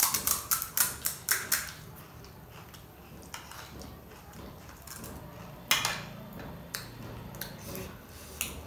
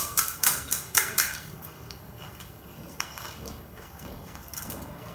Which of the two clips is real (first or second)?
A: first